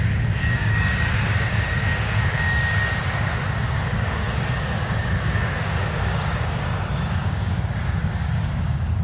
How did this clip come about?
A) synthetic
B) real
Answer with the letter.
A